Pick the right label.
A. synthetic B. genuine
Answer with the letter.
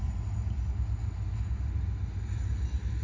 B